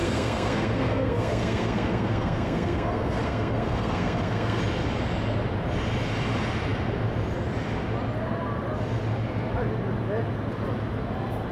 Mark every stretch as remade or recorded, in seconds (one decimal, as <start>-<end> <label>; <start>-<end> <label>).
0.0-4.6 remade; 4.6-11.5 recorded